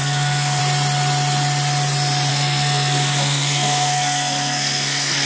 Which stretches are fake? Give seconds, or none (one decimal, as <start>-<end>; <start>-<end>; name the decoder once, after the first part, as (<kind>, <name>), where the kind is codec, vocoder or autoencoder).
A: 0.0-0.6 (codec, SNAC); 2.3-5.3